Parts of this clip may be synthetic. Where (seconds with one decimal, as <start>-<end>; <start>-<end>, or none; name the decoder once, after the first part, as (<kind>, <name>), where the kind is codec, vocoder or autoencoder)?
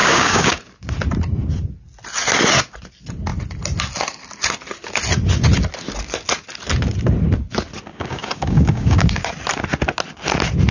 0.0-0.6 (codec, DAC); 7.9-9.3